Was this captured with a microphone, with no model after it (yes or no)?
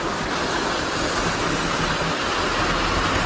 yes